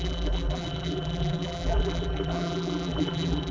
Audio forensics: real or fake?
fake